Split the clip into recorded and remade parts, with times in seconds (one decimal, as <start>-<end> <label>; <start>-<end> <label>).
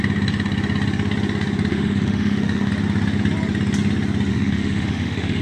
0.0-1.7 recorded; 1.7-2.7 remade; 2.7-4.3 recorded; 4.3-5.4 remade